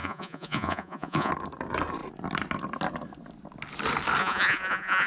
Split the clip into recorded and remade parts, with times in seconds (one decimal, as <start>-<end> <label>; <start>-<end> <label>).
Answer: 0.0-1.3 remade; 1.3-4.2 recorded; 4.2-5.1 remade